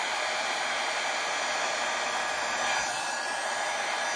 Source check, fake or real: real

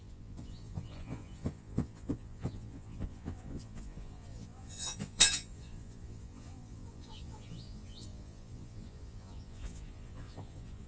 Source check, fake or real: fake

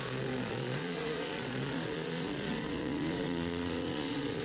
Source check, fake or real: fake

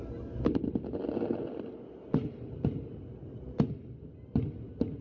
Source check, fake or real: real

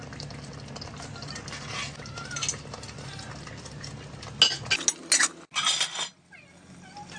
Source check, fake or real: real